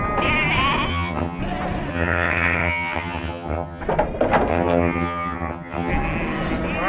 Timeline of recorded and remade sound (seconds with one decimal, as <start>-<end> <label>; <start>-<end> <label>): 0.0-0.9 recorded; 0.9-1.4 remade; 1.4-1.9 recorded; 1.9-3.8 remade; 3.8-4.5 recorded; 4.5-5.9 remade; 5.9-6.9 recorded